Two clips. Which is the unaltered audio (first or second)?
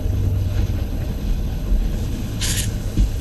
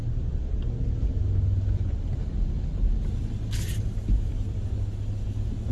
second